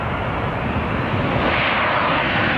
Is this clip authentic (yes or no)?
yes